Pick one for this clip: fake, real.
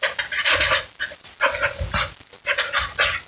real